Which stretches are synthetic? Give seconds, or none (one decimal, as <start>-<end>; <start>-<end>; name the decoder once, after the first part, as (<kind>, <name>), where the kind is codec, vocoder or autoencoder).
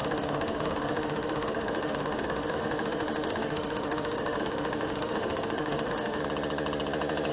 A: 0.0-6.2 (autoencoder, DAC-VAE)